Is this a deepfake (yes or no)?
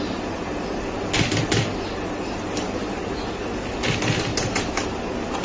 no